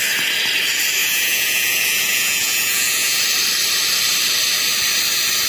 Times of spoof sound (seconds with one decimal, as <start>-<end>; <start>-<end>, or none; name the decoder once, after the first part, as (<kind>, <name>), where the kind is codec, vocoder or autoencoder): 1.0-3.2 (vocoder, Vocos)